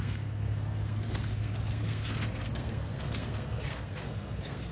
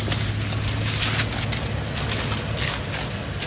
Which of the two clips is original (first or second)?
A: second